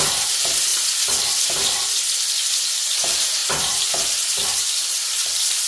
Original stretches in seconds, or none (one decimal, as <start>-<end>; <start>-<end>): 3.4-4.3